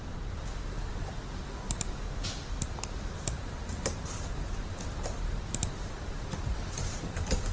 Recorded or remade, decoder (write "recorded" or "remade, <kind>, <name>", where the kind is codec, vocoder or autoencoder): recorded